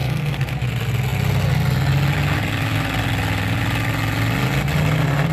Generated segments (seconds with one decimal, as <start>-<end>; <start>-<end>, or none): 0.0-0.5

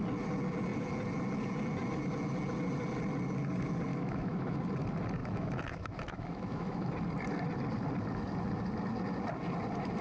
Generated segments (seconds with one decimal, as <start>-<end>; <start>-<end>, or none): 3.9-4.6; 5.2-6.9

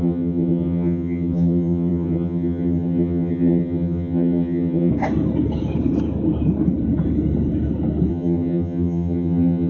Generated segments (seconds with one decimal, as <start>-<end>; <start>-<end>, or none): 0.0-4.9; 8.1-9.7

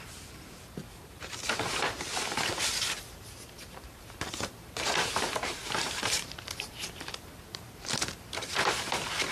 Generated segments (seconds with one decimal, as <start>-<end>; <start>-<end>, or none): 0.0-9.3

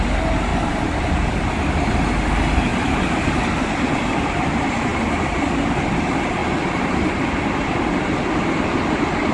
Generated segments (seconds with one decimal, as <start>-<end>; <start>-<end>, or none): 2.7-3.9; 4.9-5.4

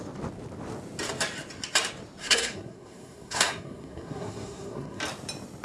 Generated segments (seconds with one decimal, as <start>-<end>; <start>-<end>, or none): 2.2-5.0